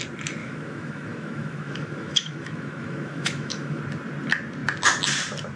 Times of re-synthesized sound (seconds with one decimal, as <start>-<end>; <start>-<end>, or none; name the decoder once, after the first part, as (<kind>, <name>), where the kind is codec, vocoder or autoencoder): 0.4-3.8 (autoencoder, DAC-VAE)